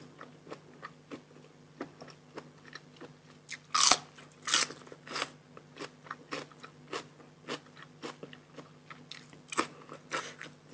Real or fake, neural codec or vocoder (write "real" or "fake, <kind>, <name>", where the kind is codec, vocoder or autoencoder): real